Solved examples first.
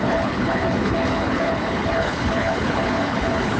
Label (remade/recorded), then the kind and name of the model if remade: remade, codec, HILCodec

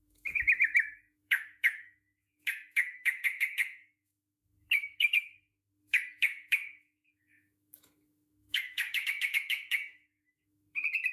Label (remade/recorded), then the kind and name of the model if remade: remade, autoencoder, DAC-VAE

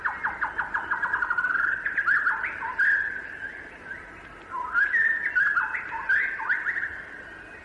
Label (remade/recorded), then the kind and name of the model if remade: recorded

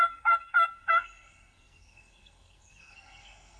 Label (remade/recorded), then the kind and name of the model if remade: remade, codec, SNAC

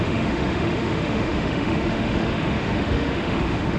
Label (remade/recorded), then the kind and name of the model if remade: remade, autoencoder, DAC-VAE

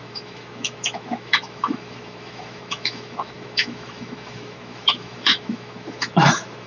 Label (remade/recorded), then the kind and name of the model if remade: remade, autoencoder, DAC-VAE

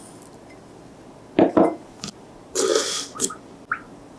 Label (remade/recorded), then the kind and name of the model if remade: recorded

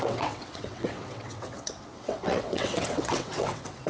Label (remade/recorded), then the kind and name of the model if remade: remade, vocoder, WaveNeXt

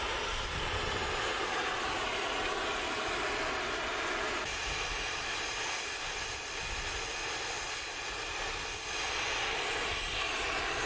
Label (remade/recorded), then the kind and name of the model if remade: recorded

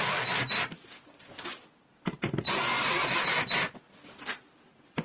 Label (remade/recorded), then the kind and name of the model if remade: recorded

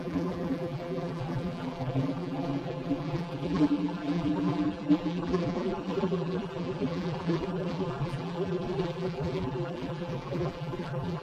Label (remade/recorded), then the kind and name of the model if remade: remade, vocoder, BigVGAN v2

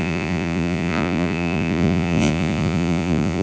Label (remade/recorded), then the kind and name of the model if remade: remade, vocoder, Vocos